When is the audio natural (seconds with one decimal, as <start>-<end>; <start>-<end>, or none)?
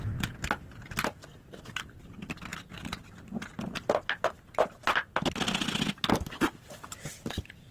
0.0-7.7